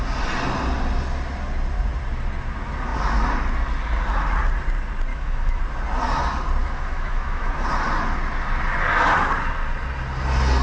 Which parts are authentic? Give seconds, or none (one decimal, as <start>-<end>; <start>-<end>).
0.0-5.1; 5.6-6.6; 7.5-10.6